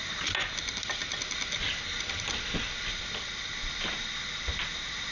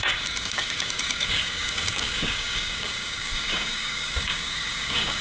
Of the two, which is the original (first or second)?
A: first